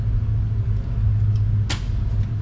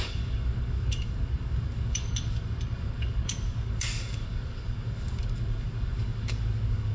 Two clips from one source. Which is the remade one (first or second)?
second